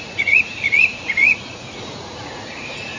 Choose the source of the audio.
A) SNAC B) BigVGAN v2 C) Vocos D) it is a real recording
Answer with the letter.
C